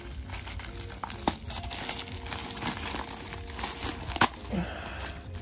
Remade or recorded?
recorded